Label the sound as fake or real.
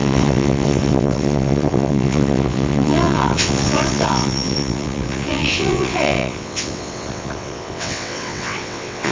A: fake